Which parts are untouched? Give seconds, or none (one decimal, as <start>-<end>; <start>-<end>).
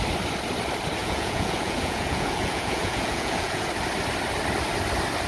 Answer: 0.0-1.0; 3.7-5.3